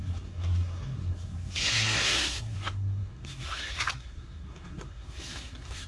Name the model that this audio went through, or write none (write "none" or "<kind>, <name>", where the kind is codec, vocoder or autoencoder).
codec, SNAC